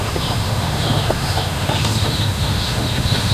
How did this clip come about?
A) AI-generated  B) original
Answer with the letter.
A